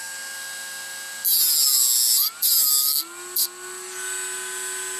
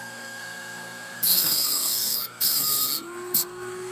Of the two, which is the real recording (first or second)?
first